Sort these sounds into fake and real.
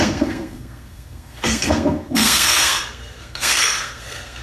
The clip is fake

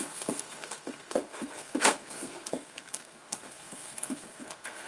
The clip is fake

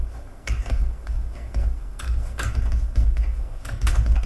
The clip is fake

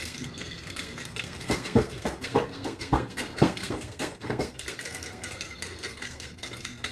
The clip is fake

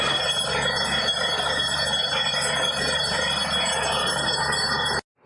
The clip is real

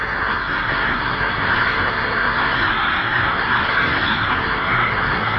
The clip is fake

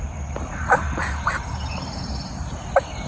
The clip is real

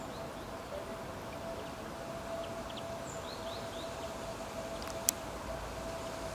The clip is real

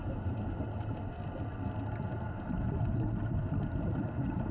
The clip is real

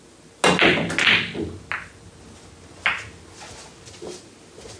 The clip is real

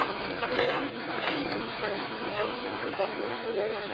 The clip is fake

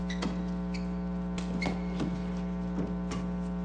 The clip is real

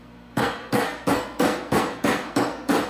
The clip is fake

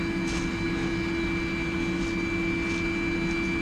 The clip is real